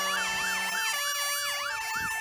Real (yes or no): yes